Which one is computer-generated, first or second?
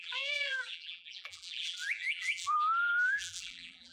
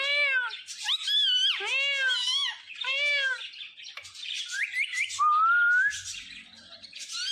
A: first